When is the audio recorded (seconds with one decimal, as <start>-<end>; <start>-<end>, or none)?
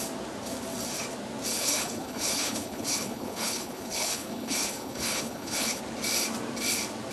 0.0-1.5; 5.8-7.1